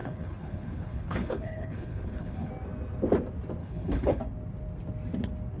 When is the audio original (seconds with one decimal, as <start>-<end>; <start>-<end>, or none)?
2.5-3.6; 4.2-5.6